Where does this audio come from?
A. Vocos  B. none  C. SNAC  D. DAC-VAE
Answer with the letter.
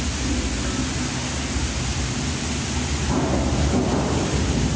B